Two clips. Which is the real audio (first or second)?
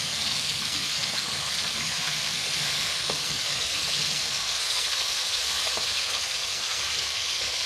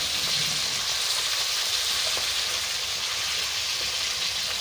second